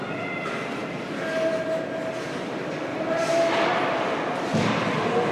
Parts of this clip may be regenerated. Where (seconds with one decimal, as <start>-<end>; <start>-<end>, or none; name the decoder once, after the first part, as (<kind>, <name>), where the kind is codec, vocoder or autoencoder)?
none